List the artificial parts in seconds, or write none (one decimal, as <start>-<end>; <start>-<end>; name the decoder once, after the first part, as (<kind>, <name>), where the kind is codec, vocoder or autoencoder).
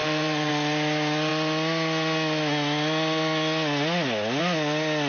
0.0-0.5 (vocoder, BigVGAN v2)